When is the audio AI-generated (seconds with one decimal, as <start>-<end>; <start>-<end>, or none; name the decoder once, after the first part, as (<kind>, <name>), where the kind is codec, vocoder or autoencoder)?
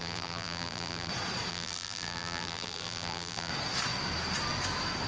0.0-1.1 (vocoder, BigVGAN v2); 1.5-3.5